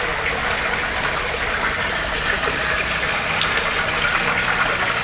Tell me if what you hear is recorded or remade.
recorded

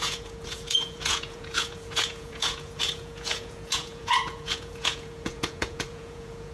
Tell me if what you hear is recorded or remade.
remade